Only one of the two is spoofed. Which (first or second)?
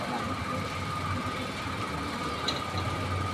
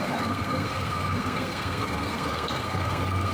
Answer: second